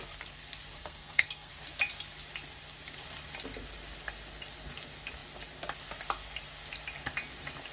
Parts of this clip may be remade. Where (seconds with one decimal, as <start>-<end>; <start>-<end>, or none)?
0.8-1.5